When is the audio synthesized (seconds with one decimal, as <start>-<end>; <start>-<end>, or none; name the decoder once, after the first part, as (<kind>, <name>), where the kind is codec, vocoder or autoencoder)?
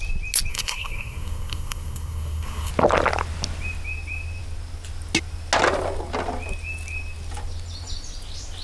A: 0.5-2.7 (codec, SNAC)